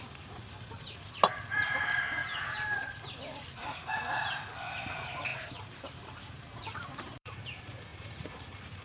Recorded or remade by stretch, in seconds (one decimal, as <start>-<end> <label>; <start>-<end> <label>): 0.0-2.2 recorded; 2.2-4.5 remade; 4.5-5.3 recorded; 5.3-7.4 remade; 7.4-7.9 recorded; 7.9-8.8 remade